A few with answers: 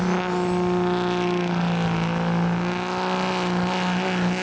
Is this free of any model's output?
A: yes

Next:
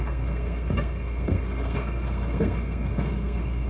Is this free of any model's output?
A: no